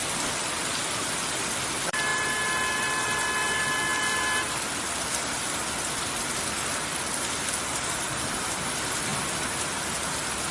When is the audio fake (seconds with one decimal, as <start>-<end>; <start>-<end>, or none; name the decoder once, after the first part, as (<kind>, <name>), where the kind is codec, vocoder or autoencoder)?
0.0-2.1 (vocoder, BigVGAN v2); 2.7-9.1; 9.6-10.5